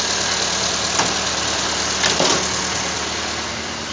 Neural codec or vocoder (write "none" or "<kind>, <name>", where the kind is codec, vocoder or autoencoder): none